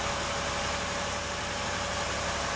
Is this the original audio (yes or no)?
yes